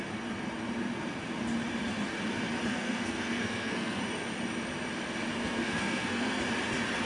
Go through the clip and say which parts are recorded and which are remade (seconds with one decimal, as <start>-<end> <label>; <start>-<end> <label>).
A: 0.0-2.7 recorded; 2.7-4.0 remade; 4.0-5.4 recorded; 5.4-6.4 remade; 6.4-7.1 recorded